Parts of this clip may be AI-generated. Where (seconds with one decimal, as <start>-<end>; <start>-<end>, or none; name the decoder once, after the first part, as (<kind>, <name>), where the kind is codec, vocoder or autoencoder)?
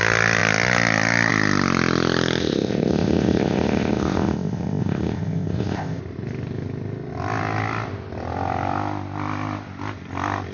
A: 2.4-6.0 (codec, ZipCodec)